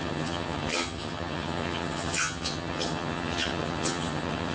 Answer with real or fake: fake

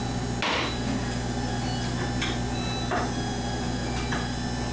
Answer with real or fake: real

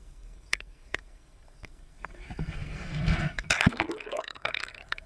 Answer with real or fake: fake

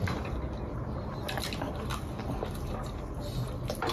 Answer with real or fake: real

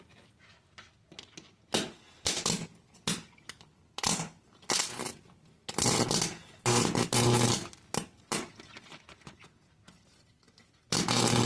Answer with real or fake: real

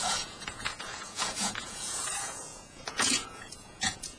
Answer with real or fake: fake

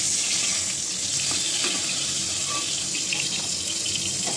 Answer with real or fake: real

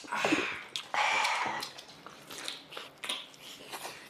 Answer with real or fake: real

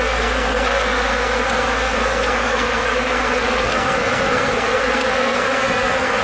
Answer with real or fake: fake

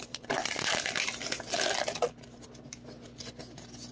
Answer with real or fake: real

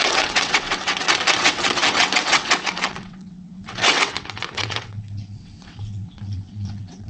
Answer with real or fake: fake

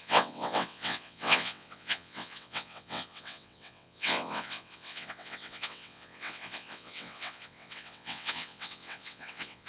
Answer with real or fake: fake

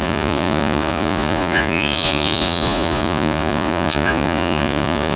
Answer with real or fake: fake